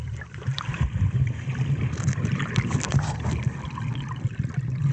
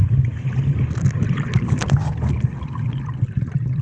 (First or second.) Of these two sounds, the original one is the second